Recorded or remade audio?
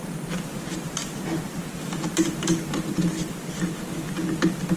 recorded